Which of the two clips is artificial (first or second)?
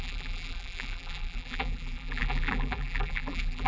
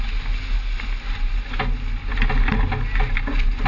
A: first